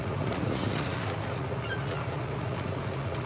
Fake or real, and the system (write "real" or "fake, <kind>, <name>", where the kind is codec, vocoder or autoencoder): fake, vocoder, Vocos